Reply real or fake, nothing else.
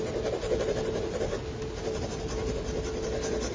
real